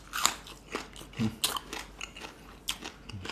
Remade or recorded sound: recorded